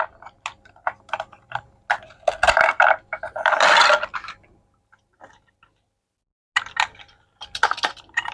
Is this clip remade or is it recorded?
recorded